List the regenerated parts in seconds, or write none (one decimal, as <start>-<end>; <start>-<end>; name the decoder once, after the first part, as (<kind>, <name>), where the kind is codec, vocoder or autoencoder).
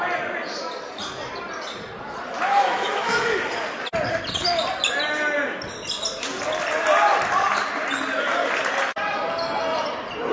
2.5-3.4 (autoencoder, DAC-VAE)